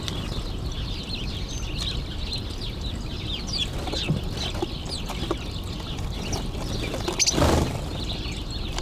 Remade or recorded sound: recorded